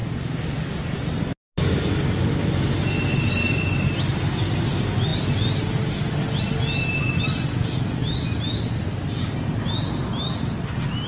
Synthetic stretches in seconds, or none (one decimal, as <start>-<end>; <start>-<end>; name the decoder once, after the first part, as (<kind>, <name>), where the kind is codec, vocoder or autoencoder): 0.0-1.2 (vocoder, BigVGAN v2)